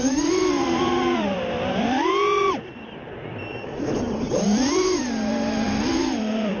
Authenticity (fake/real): fake